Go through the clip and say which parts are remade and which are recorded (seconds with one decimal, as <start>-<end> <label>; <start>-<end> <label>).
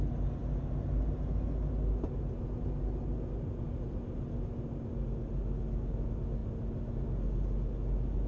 0.0-8.3 recorded